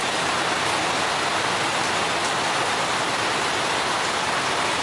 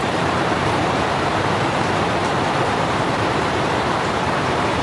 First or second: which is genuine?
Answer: first